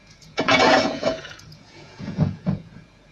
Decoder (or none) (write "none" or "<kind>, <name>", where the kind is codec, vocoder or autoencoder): vocoder, Vocos